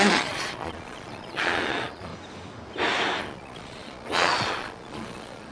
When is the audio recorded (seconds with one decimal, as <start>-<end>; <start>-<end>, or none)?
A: 2.1-3.2